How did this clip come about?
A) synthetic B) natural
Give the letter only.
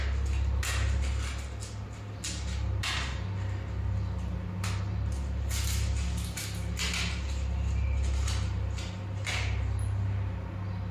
B